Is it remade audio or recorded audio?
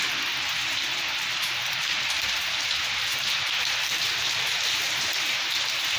remade